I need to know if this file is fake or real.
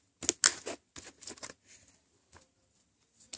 real